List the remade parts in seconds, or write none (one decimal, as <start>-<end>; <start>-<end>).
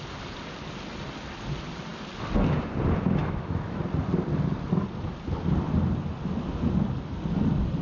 3.2-3.8